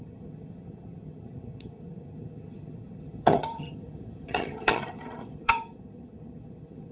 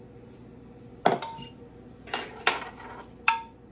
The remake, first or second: first